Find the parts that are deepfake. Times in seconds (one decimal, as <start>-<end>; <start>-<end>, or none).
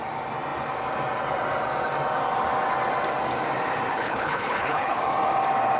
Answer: 3.9-5.0